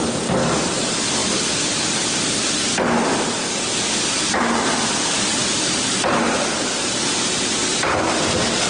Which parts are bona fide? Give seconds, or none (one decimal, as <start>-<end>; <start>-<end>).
0.0-5.4; 6.0-7.6